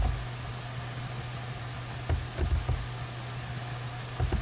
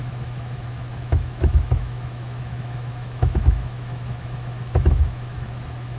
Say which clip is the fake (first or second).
second